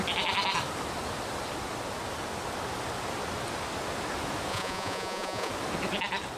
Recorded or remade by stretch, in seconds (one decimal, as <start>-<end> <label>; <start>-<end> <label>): 0.0-4.5 recorded; 4.5-5.5 remade; 5.5-6.4 recorded